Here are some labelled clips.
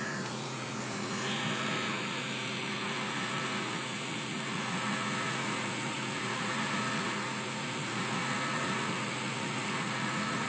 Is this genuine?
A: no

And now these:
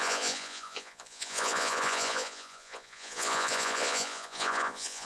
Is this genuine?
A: no